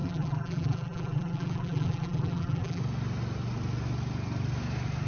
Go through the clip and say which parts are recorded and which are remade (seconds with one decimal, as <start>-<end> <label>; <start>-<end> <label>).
0.0-2.8 remade; 2.8-5.1 recorded